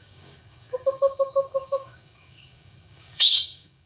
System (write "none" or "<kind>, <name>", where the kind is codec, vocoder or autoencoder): codec, DAC